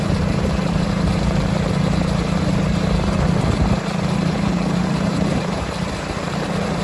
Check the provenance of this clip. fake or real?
fake